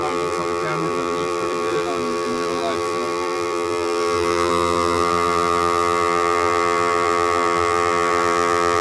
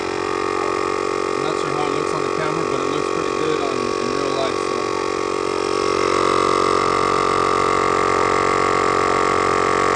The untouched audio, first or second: second